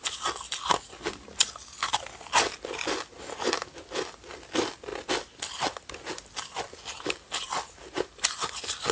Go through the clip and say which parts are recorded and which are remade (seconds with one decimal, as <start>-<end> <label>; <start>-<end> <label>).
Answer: 0.0-8.9 recorded